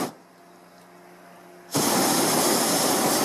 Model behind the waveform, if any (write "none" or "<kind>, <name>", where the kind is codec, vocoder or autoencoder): none